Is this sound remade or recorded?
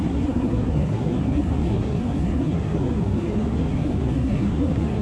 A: remade